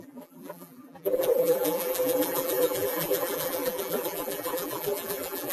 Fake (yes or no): yes